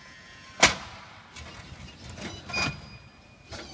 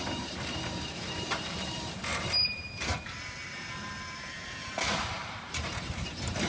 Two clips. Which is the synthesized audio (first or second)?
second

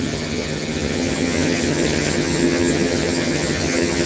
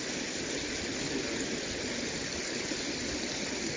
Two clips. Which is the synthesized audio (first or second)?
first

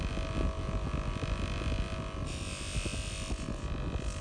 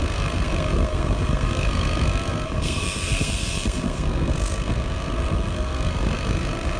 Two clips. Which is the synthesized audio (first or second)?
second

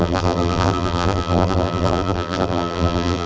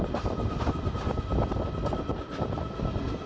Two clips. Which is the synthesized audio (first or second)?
first